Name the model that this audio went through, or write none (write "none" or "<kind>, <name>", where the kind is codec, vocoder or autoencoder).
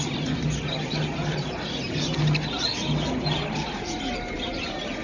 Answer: none